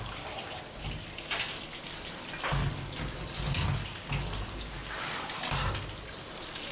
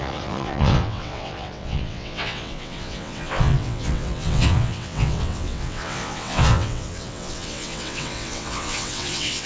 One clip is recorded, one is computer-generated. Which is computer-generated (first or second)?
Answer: second